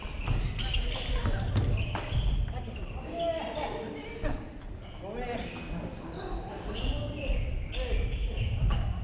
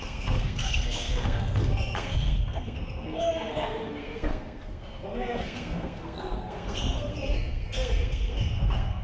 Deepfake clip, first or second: second